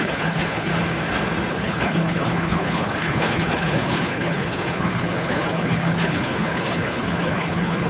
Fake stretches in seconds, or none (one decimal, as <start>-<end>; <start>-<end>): 0.0-0.7; 1.5-7.9